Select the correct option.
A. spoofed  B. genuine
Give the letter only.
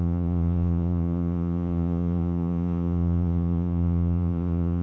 A